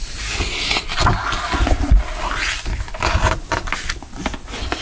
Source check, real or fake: real